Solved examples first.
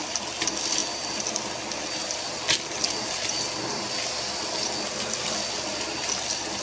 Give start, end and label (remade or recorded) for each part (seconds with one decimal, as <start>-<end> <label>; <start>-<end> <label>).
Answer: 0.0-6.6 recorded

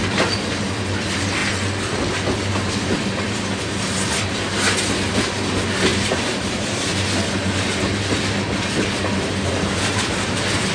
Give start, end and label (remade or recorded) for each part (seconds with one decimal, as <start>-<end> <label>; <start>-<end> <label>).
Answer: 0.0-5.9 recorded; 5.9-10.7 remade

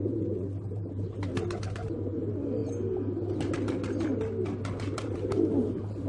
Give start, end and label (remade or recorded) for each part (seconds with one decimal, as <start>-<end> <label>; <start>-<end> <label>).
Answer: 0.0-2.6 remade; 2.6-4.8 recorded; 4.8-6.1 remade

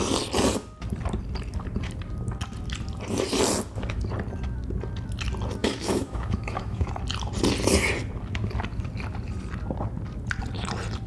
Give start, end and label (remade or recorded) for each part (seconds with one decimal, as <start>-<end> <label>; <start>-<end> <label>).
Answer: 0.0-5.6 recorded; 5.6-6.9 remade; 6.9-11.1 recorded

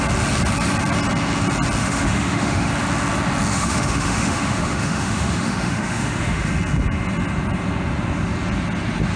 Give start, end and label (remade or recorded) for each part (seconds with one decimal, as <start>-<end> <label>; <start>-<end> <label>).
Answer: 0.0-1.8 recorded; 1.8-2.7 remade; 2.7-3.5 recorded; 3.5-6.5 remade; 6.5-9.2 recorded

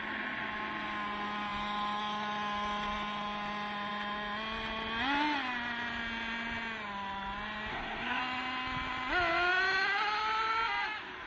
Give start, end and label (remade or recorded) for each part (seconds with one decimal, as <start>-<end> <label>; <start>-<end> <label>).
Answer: 0.0-7.7 recorded; 7.7-8.2 remade; 8.2-11.3 recorded

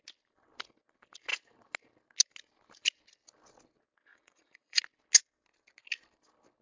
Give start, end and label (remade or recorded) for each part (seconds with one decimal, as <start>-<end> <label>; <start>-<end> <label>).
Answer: 0.0-4.1 recorded; 4.1-4.8 remade; 4.8-6.6 recorded

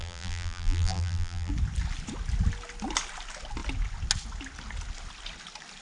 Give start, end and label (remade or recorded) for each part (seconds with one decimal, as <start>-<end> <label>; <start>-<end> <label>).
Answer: 0.0-1.5 remade; 1.5-5.8 recorded